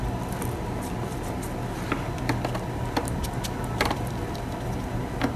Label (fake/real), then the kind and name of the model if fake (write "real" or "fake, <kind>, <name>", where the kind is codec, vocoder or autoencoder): real